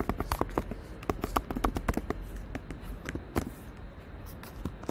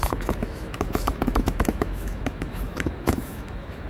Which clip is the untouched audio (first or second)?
first